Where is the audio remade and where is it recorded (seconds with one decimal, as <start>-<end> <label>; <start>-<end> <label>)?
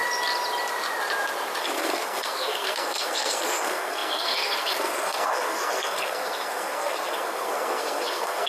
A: 0.0-1.6 recorded; 1.6-8.5 remade